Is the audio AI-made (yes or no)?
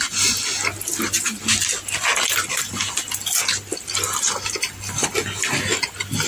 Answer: no